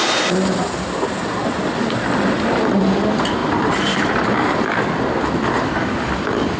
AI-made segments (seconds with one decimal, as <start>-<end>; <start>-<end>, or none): 3.4-4.8